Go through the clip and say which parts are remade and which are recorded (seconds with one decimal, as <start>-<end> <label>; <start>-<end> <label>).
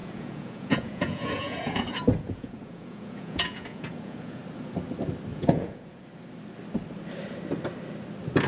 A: 0.0-4.4 remade; 4.4-5.3 recorded; 5.3-6.0 remade; 6.0-8.5 recorded